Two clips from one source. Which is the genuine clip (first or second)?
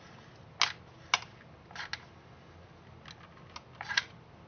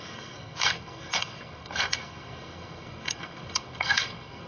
first